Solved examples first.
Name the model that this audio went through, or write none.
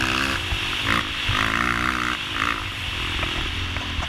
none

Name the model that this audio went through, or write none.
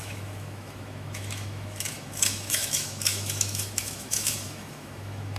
autoencoder, DAC-VAE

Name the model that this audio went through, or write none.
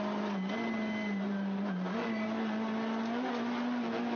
none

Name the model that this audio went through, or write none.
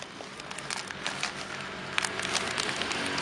none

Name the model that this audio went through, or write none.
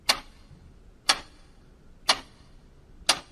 none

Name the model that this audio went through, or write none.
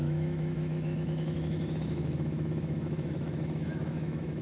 autoencoder, DAC-VAE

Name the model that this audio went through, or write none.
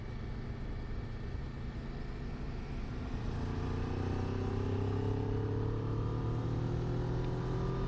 none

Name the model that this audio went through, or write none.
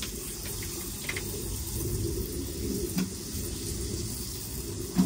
none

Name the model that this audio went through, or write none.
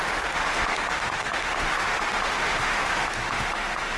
autoencoder, DAC-VAE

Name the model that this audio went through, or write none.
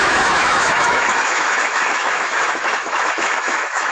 autoencoder, DAC-VAE